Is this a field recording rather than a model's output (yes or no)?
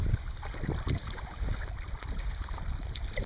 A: yes